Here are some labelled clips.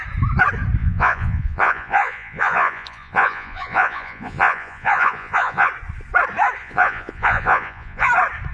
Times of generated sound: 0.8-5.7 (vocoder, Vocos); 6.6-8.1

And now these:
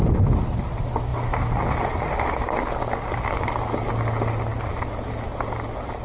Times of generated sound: none